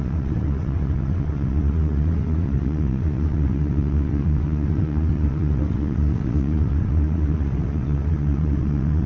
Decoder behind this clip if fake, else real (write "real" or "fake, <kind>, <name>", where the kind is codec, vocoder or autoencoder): fake, vocoder, WaveNeXt